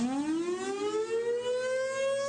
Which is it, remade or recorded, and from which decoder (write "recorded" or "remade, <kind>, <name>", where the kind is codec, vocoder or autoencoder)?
recorded